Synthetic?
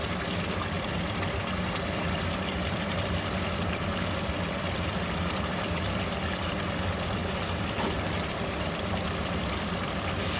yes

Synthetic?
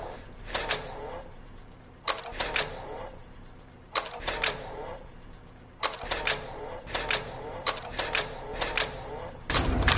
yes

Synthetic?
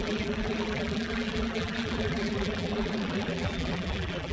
yes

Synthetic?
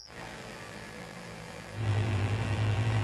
yes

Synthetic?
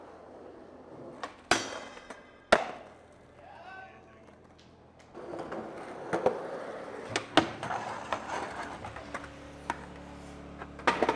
no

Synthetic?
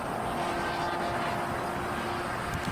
no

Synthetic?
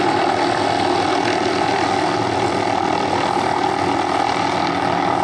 no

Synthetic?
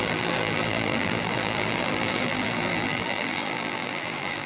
yes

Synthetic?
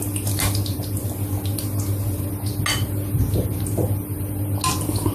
no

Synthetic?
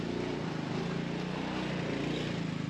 no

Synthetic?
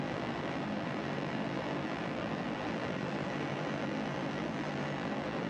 yes